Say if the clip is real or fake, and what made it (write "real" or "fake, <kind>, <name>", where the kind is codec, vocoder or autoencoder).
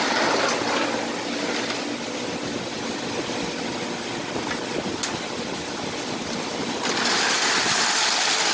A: real